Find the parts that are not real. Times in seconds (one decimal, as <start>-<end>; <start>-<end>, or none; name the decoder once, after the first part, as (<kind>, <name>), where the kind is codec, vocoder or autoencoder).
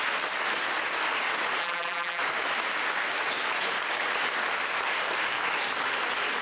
1.6-2.2 (vocoder, BigVGAN v2)